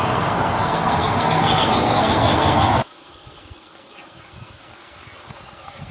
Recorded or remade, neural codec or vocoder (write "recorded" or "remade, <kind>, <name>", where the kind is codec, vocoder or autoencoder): remade, codec, SNAC